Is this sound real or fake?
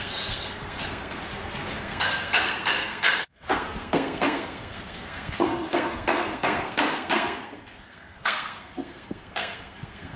fake